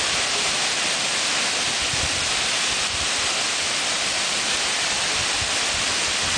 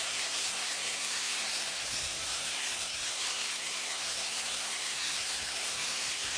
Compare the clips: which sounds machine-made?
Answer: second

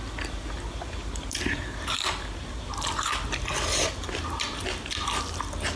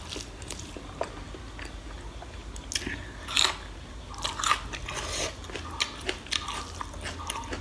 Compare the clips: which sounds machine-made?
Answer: first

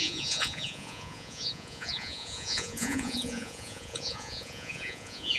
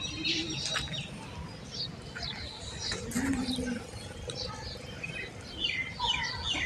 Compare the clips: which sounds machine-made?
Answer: first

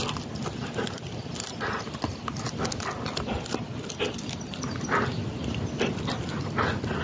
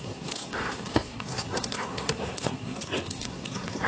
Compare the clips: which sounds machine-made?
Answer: second